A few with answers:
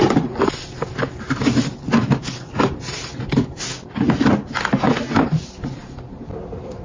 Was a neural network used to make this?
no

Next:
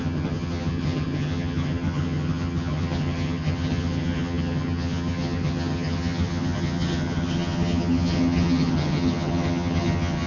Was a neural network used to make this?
yes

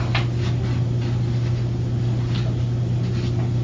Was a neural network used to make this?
no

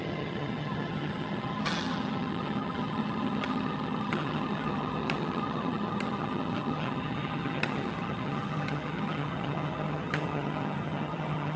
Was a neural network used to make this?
yes